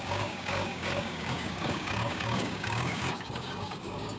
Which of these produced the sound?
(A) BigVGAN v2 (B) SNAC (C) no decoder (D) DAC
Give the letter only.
D